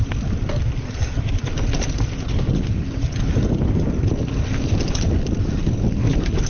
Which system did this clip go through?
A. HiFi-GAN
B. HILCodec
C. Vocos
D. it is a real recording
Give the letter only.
D